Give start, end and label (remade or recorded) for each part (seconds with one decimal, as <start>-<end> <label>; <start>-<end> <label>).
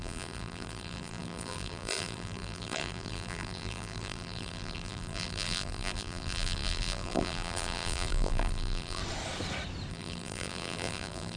0.0-9.0 remade; 9.0-9.9 recorded; 9.9-11.4 remade